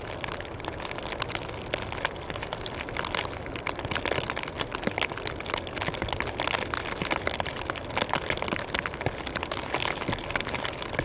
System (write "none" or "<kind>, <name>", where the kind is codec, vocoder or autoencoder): none